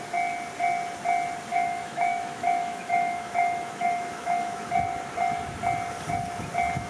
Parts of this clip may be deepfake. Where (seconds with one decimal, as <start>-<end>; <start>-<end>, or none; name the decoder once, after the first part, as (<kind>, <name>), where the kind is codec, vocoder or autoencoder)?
1.5-4.7 (autoencoder, DAC-VAE)